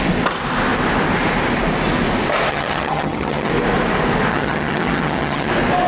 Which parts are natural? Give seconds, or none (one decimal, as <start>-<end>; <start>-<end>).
0.0-2.5; 3.5-4.3; 5.5-5.9